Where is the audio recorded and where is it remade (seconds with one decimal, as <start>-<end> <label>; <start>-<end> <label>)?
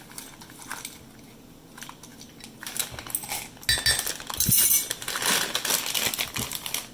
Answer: 0.0-6.9 recorded